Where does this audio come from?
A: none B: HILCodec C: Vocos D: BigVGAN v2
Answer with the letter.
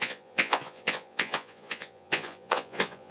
C